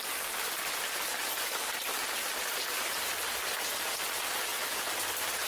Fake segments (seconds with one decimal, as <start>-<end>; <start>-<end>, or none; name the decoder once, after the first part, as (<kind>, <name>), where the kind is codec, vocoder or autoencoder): none